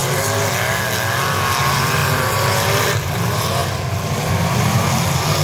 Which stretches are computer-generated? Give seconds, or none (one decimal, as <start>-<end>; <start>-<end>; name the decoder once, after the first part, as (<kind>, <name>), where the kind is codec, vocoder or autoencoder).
1.6-3.6 (vocoder, BigVGAN v2); 4.3-5.4